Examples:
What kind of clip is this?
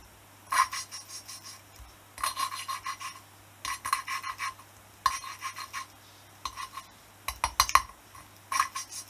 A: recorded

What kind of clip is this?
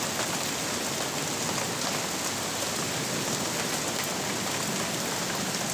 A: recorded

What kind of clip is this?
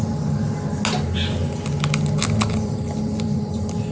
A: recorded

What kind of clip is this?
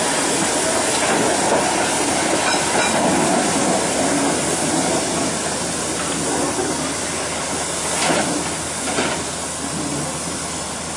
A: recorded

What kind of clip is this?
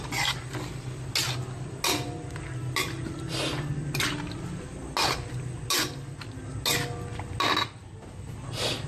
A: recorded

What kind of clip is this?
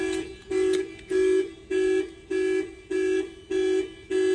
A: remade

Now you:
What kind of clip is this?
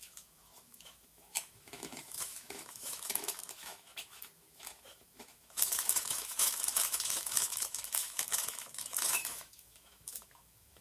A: remade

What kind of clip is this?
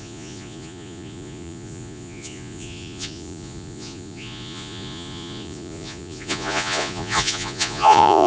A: remade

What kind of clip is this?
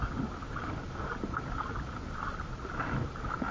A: recorded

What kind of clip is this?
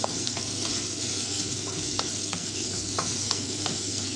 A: remade